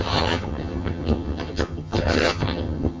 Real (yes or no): no